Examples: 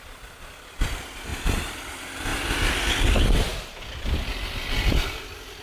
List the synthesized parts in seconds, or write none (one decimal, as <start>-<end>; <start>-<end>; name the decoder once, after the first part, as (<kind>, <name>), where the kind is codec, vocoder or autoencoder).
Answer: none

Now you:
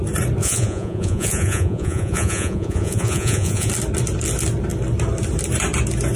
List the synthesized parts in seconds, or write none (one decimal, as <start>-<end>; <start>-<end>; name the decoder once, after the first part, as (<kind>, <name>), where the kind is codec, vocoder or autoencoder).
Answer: 0.4-3.7 (vocoder, Vocos)

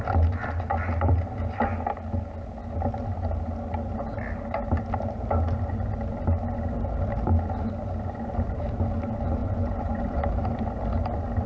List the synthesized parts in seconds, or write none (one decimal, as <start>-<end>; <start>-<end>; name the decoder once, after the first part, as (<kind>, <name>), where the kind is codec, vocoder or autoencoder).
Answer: 9.4-10.2 (vocoder, Vocos)

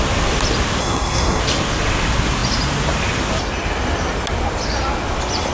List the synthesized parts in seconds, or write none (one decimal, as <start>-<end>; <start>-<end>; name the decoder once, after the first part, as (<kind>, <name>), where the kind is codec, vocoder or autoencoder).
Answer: 0.8-1.4 (codec, SNAC)

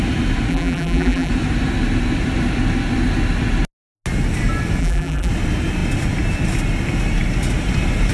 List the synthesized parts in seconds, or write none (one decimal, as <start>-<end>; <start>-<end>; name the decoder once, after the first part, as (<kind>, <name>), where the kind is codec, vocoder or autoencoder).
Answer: 0.5-1.3 (vocoder, BigVGAN v2); 4.8-5.3